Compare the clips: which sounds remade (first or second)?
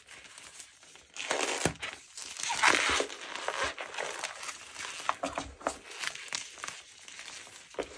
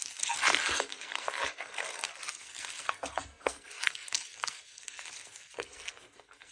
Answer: second